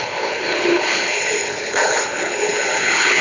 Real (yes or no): no